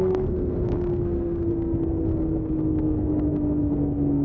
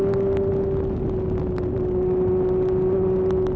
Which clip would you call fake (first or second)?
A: first